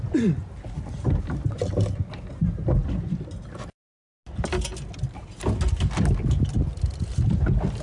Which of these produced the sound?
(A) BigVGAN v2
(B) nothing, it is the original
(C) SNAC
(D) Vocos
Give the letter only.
B